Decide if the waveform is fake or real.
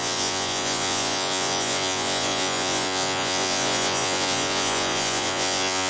fake